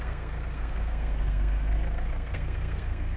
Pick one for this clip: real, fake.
fake